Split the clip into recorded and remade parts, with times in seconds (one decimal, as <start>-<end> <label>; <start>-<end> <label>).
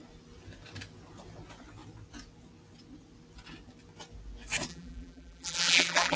0.0-4.7 recorded; 4.7-6.2 remade